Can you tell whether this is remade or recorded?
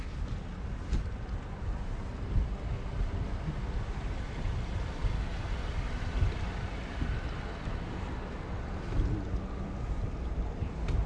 recorded